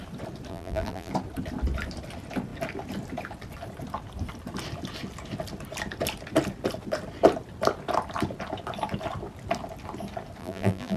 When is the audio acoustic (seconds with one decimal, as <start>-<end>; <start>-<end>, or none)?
0.0-0.5; 1.1-10.4